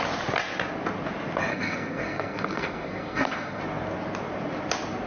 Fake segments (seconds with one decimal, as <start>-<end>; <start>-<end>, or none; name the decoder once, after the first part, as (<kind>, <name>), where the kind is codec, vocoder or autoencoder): 1.5-3.6 (codec, SNAC)